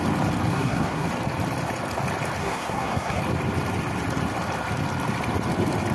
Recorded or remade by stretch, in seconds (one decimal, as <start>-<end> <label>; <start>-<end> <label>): 0.0-0.5 recorded; 0.5-1.1 remade; 1.1-2.4 recorded; 2.4-3.2 remade; 3.2-5.9 recorded